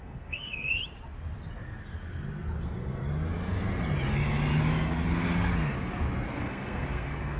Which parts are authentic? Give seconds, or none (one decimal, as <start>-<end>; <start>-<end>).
0.8-2.6; 3.0-6.4